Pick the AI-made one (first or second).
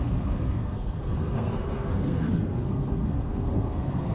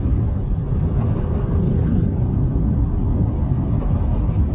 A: first